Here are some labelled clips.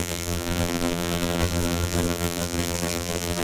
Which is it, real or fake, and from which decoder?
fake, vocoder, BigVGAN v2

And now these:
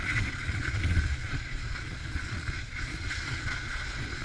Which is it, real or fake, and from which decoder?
fake, vocoder, Vocos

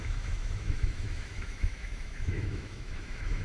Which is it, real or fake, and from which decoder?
fake, autoencoder, DAC-VAE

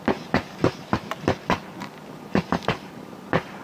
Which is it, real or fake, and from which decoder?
real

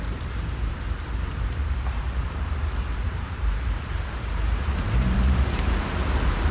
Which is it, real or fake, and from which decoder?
fake, vocoder, BigVGAN v2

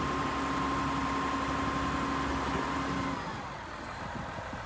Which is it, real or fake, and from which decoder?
real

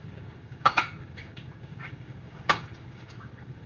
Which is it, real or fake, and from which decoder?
fake, codec, DAC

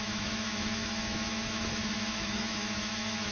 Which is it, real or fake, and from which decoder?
fake, autoencoder, DAC-VAE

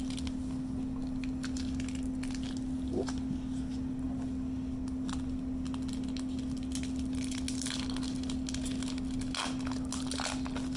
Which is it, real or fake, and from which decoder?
real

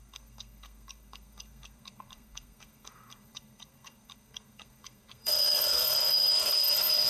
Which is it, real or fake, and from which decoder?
fake, codec, SNAC